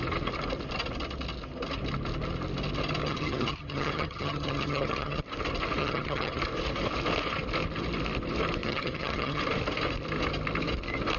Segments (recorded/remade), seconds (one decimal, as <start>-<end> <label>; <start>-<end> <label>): 0.0-3.0 recorded; 3.0-5.2 remade; 5.2-5.8 recorded; 5.8-6.4 remade; 6.4-8.6 recorded; 8.6-9.4 remade; 9.4-11.2 recorded